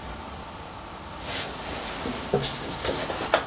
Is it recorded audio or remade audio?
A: recorded